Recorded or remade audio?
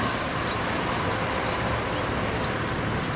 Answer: recorded